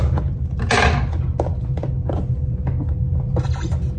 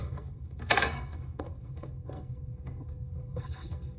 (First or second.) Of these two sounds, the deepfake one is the second